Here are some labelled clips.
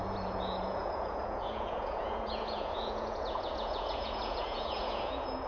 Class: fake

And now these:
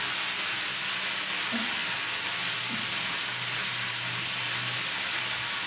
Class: real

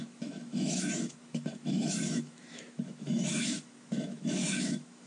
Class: fake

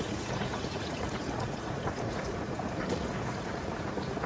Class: fake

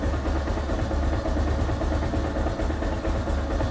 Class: real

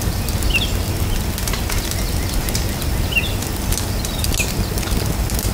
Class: real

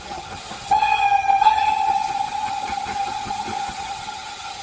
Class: fake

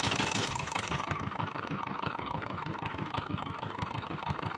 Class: fake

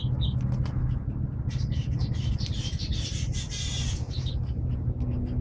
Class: real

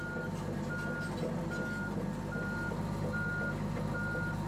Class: real